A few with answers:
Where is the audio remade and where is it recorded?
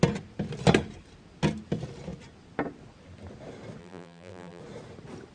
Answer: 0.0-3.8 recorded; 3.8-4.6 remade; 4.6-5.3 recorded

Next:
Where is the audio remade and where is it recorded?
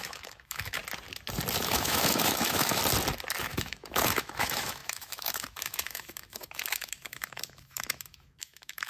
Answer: 0.0-0.8 remade; 0.8-1.6 recorded; 1.6-2.8 remade; 2.8-3.4 recorded; 3.4-8.9 remade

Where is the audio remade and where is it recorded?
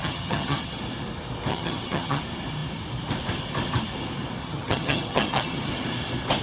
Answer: 0.0-0.8 remade; 0.8-1.5 recorded; 1.5-2.2 remade; 2.2-4.4 recorded; 4.4-5.7 remade; 5.7-6.4 recorded